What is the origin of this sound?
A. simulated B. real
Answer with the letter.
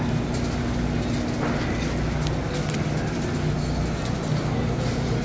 B